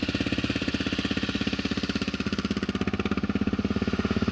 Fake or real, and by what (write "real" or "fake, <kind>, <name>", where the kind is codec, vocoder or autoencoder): real